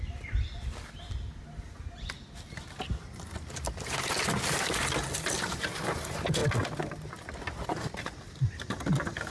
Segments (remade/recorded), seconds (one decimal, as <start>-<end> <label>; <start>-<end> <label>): 0.0-9.3 recorded